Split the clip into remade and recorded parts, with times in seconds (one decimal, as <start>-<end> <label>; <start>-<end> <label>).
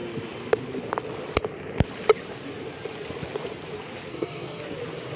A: 0.0-4.1 recorded; 4.1-4.6 remade; 4.6-5.2 recorded